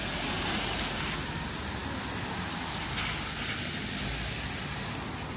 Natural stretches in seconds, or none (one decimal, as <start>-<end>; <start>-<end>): 0.0-5.4